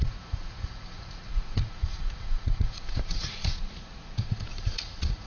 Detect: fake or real fake